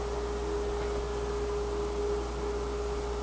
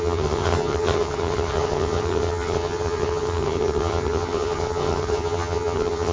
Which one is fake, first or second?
second